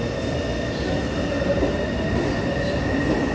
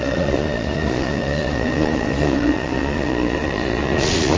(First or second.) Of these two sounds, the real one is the first